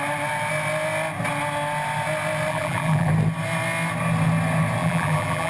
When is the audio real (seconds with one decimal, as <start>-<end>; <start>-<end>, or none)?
0.0-2.5; 3.1-4.8